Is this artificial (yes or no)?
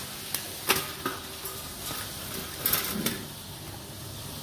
no